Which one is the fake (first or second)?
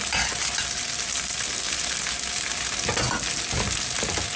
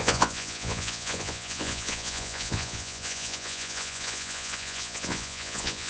second